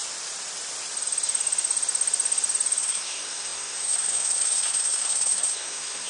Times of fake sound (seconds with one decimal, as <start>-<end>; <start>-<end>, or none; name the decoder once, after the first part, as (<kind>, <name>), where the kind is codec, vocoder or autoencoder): 2.8-6.1 (codec, SNAC)